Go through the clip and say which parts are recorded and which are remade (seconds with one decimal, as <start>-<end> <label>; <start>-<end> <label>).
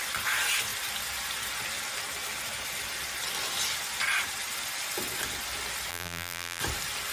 0.0-5.9 recorded; 5.9-6.6 remade; 6.6-7.1 recorded